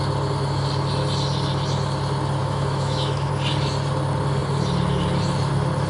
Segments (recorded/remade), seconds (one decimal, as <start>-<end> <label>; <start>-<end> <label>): 0.0-2.4 recorded; 2.4-3.3 remade; 3.3-5.9 recorded